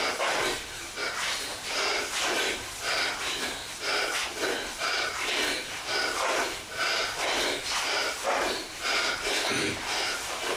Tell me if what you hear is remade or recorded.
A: remade